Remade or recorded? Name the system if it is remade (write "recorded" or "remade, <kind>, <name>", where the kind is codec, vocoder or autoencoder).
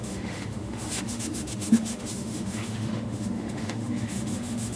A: remade, autoencoder, DAC-VAE